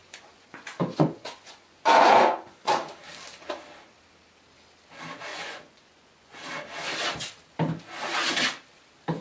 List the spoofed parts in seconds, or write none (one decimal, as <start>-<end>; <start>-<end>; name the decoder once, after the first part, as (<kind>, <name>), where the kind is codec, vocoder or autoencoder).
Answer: 0.0-2.7 (vocoder, Vocos); 5.3-6.4